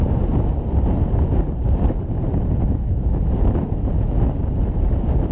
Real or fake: real